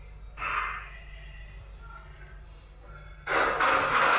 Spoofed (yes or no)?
no